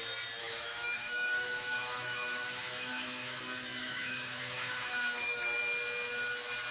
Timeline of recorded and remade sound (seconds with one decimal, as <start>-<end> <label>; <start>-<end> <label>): 0.0-0.4 recorded; 0.4-3.4 remade; 3.4-3.8 recorded; 3.8-5.6 remade; 5.6-6.7 recorded

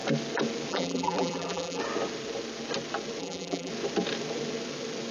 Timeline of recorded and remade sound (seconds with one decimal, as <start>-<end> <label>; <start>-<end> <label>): 0.0-0.7 recorded; 0.7-1.8 remade; 1.8-3.2 recorded; 3.2-3.7 remade; 3.7-5.1 recorded